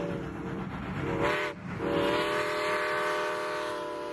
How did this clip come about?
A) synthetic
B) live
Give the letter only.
B